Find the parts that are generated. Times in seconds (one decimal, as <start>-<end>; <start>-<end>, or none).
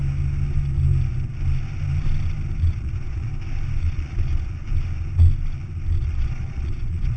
2.7-3.3; 3.8-4.6; 6.0-7.2